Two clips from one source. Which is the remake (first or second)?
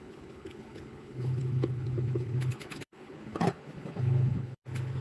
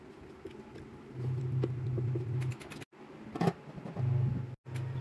first